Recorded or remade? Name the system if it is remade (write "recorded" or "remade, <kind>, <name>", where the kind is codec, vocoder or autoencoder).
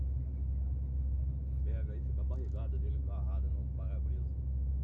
recorded